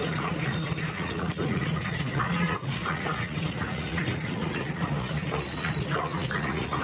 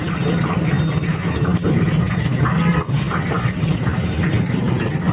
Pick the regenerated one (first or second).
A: first